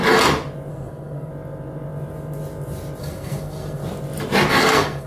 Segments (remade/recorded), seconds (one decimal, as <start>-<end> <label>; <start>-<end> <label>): 0.0-0.7 recorded; 0.7-1.3 remade; 1.3-3.0 recorded; 3.0-3.8 remade; 3.8-4.5 recorded; 4.5-5.1 remade